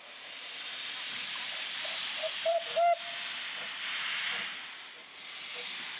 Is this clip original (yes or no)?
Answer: yes